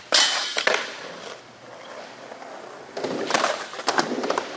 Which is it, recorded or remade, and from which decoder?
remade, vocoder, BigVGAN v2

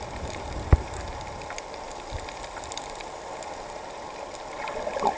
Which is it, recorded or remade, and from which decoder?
recorded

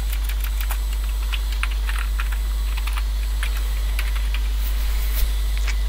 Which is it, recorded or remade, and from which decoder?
recorded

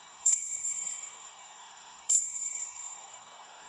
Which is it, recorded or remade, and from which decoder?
remade, codec, SNAC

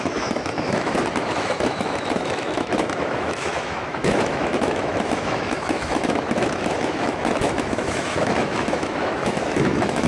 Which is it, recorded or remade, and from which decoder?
remade, autoencoder, DAC-VAE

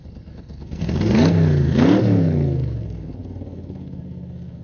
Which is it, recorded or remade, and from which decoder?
remade, codec, SNAC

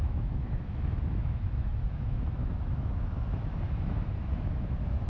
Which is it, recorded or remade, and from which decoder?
remade, autoencoder, DAC-VAE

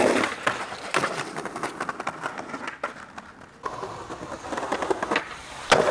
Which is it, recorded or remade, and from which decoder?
recorded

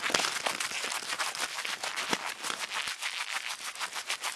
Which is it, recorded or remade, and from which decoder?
recorded